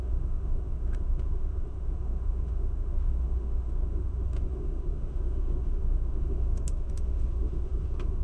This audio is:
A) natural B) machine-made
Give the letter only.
B